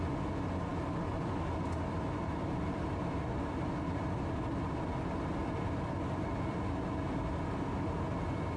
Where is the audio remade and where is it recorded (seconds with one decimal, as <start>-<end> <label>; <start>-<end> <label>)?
0.0-8.6 recorded